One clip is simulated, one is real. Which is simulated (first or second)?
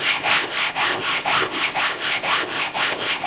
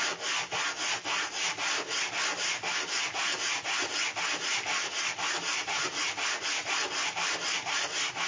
first